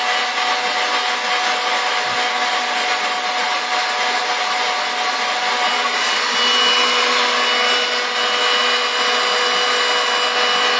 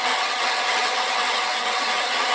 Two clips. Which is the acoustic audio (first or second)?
first